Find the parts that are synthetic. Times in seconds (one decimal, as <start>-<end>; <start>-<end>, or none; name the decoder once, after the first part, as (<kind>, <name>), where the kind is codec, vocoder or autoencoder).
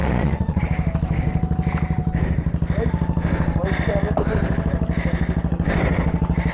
0.0-0.6 (vocoder, Vocos)